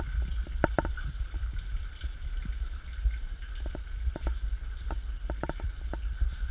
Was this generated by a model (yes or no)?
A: no